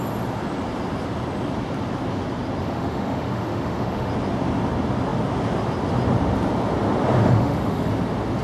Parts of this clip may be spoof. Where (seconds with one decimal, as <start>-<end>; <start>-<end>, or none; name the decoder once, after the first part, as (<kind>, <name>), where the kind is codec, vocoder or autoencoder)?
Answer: 2.6-4.1 (autoencoder, DAC-VAE); 7.2-7.9